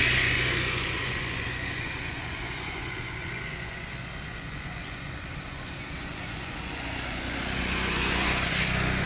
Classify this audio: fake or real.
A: fake